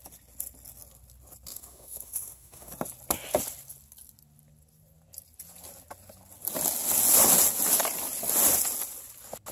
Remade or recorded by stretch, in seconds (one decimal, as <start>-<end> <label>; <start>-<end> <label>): 0.0-1.5 recorded; 1.5-2.7 remade; 2.7-9.5 recorded